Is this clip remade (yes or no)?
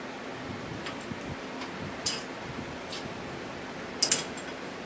no